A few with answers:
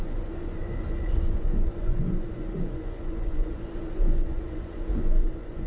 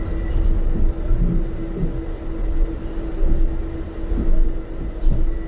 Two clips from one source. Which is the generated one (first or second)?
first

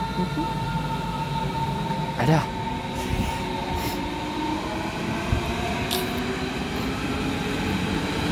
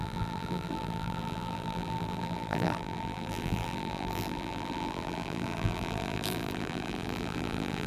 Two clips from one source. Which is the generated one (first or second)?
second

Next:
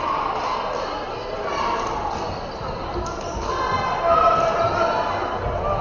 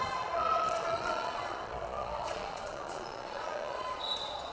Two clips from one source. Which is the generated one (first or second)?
second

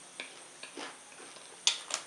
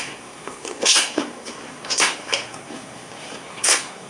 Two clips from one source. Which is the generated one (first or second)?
second